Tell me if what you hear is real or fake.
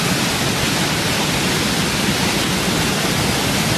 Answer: real